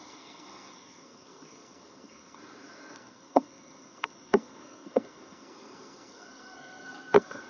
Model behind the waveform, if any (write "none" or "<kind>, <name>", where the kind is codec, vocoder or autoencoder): codec, SNAC